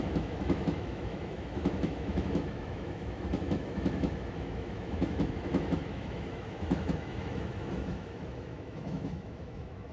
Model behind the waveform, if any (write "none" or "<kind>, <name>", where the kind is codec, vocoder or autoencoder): autoencoder, DAC-VAE